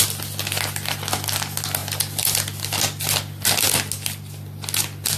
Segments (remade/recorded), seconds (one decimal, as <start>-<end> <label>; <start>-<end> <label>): 0.0-5.2 recorded